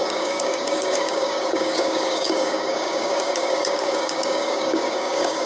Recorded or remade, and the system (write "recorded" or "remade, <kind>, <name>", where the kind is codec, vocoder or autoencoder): remade, codec, DAC